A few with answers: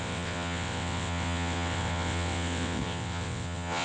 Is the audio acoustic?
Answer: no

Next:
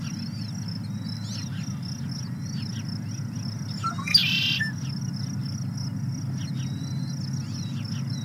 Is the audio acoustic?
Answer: yes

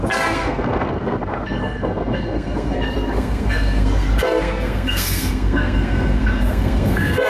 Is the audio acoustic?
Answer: no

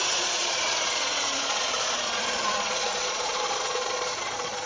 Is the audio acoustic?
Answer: no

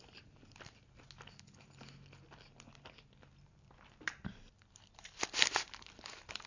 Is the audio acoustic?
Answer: yes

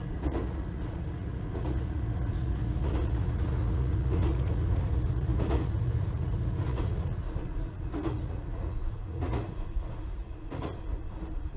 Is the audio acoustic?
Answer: no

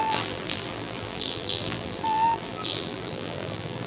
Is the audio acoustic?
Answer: no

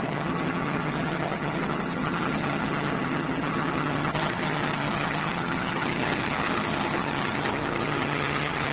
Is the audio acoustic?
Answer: no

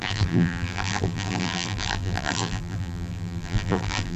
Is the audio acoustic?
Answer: no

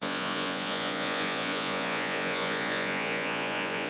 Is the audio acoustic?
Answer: no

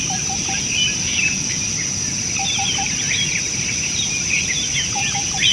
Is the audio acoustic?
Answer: no